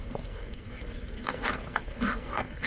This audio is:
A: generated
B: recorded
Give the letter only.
A